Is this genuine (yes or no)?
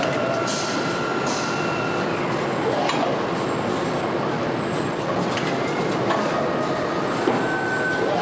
yes